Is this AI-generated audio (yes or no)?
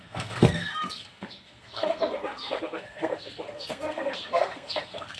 yes